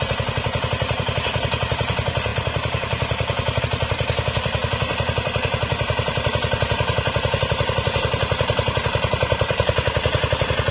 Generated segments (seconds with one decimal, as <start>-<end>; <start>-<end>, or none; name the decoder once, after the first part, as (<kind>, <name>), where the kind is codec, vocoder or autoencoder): 0.0-10.7 (vocoder, BigVGAN v2)